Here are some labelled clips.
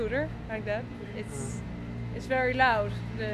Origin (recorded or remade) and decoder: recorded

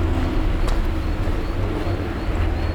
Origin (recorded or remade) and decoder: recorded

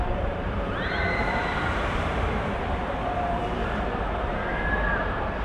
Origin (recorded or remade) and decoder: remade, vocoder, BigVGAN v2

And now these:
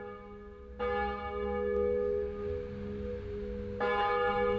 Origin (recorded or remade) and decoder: recorded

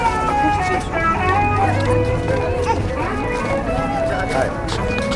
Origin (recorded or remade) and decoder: recorded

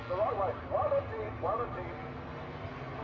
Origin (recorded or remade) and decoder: recorded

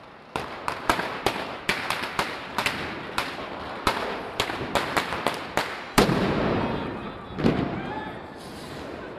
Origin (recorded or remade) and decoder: recorded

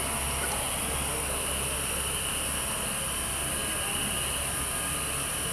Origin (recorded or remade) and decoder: recorded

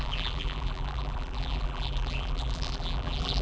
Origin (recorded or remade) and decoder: remade, vocoder, BigVGAN v2